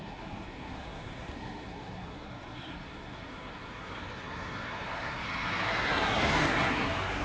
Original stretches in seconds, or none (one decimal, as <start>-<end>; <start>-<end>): none